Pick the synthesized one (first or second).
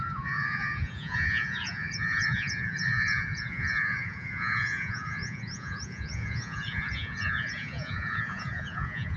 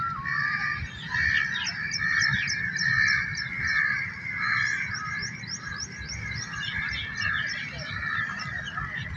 first